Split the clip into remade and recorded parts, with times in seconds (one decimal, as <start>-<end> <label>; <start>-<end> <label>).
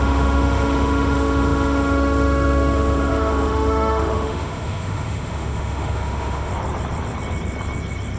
0.0-6.5 remade; 6.5-8.2 recorded